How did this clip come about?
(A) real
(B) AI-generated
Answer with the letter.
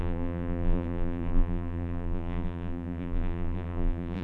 B